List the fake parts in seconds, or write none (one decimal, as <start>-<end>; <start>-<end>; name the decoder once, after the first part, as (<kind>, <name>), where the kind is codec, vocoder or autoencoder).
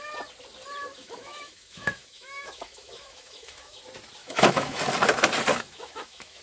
0.9-3.8 (autoencoder, DAC-VAE); 4.2-4.8; 5.5-6.4